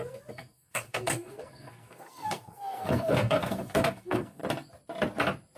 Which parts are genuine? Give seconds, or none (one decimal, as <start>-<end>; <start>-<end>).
4.4-5.6